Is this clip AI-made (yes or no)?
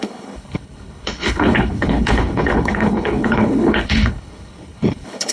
yes